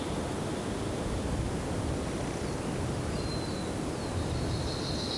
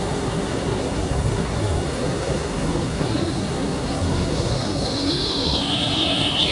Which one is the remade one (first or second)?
second